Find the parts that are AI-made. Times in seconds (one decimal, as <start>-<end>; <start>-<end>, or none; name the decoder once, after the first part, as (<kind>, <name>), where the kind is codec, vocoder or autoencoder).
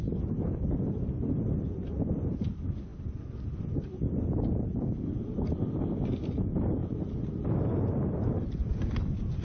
none